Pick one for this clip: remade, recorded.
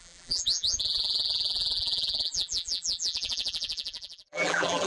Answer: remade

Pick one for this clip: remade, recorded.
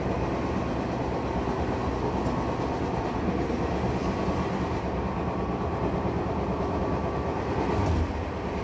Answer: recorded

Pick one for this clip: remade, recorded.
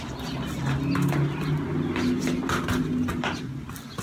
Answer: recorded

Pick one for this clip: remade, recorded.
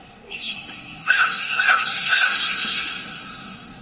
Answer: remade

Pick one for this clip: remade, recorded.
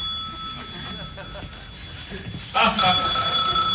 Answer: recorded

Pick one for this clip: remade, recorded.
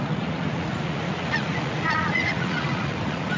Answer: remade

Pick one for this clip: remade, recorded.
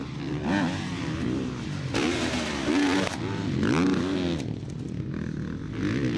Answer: recorded